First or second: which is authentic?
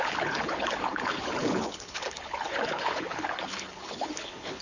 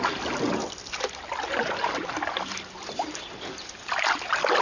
second